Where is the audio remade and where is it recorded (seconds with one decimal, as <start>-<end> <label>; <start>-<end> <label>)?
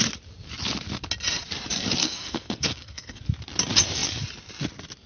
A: 0.0-2.0 recorded; 2.0-3.2 remade; 3.2-5.1 recorded